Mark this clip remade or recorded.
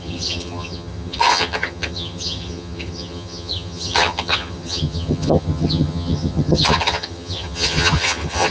remade